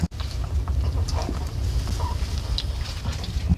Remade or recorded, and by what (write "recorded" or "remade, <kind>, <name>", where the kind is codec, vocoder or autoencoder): recorded